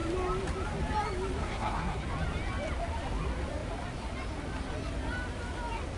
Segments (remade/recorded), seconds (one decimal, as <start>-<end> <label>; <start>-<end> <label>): 0.0-1.4 recorded; 1.4-2.0 remade; 2.0-6.0 recorded